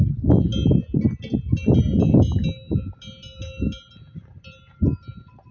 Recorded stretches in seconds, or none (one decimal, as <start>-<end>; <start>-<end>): 0.0-5.5